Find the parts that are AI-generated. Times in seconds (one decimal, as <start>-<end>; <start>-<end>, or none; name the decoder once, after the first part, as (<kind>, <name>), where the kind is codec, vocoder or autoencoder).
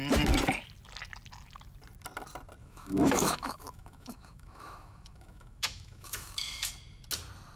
2.6-6.7 (autoencoder, DAC-VAE)